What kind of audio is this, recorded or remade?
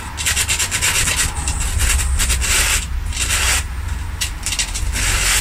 recorded